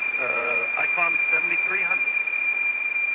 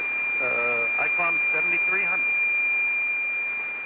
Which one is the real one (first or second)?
second